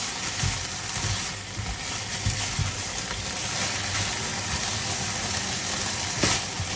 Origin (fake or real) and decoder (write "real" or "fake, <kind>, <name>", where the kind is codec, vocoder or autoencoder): real